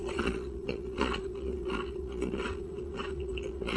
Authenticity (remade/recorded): remade